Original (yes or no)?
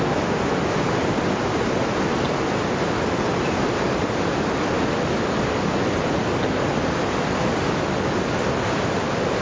yes